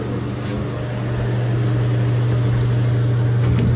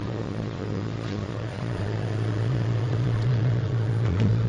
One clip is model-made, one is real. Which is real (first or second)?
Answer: first